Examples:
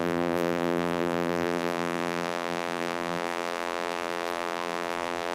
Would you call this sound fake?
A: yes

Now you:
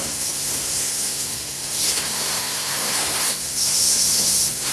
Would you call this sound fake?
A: yes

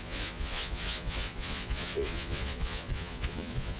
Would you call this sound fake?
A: yes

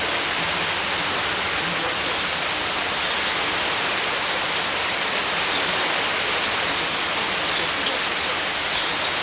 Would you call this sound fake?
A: no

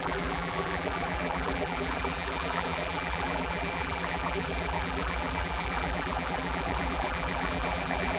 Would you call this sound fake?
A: yes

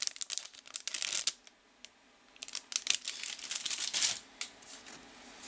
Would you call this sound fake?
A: no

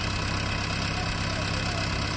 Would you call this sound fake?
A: no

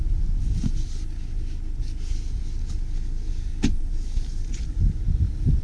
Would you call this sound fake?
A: no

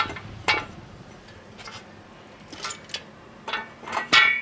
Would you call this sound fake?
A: no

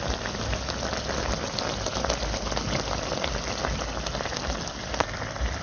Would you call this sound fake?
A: no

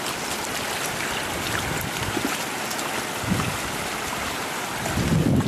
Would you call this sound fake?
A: no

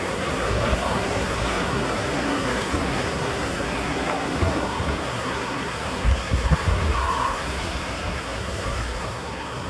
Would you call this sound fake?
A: yes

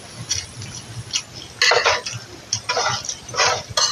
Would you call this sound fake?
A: no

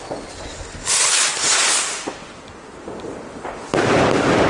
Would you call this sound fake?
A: no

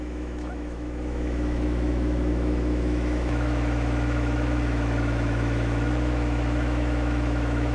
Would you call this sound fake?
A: yes